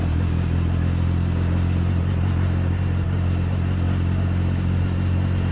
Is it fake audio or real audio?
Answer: real